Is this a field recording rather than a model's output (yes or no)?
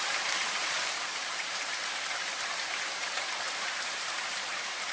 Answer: no